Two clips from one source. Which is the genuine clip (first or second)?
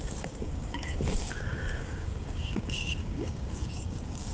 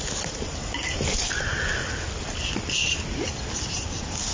second